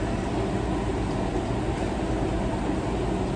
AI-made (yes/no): no